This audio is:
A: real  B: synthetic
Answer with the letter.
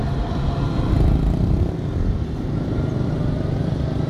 A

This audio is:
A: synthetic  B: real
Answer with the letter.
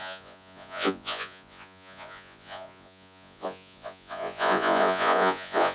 A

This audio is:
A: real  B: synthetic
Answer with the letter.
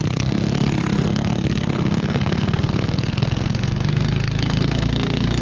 B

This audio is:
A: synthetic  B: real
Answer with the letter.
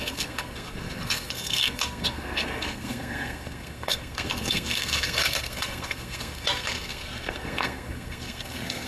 A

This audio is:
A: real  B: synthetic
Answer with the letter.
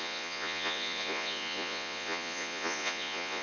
B